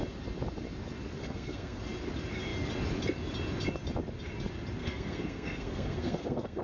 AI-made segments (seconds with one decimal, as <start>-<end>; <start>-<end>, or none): 1.2-1.8; 4.8-6.6